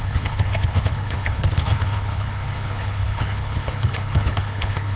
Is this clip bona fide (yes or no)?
no